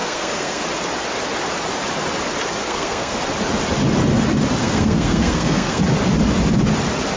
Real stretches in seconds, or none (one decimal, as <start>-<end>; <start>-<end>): 0.6-2.6; 3.2-4.6; 5.8-7.2